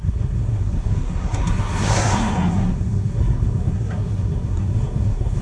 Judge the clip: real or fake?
fake